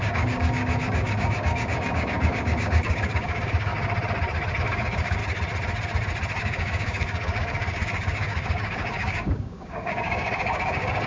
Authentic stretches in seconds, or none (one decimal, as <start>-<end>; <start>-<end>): 3.7-4.6; 5.2-6.4